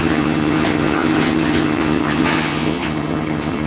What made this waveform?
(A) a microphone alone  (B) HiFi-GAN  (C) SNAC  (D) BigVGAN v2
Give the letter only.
B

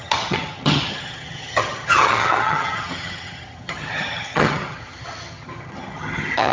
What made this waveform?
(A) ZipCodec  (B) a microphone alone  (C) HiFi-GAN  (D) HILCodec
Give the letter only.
C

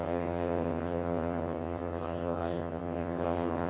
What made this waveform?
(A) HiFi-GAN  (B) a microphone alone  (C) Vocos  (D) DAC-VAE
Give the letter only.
A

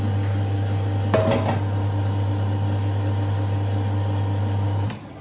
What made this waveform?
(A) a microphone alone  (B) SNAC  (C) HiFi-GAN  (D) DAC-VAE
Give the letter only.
A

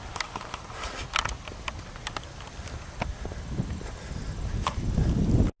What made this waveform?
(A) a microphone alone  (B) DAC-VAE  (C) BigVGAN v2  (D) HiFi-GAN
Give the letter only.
A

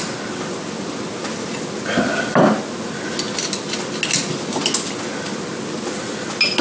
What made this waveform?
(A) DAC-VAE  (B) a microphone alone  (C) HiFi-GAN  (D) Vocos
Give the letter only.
B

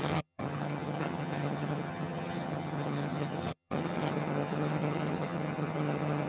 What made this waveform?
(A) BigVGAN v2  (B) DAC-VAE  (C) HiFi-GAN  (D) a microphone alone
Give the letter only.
C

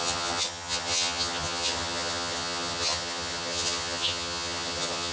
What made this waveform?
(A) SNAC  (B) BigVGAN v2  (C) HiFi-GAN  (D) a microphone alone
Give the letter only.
C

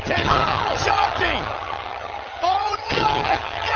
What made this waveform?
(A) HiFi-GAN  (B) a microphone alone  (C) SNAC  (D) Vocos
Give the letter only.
A